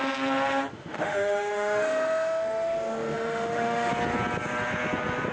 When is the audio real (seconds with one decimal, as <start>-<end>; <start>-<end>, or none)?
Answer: 0.0-0.7; 3.9-5.3